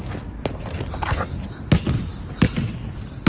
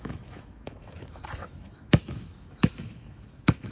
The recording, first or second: first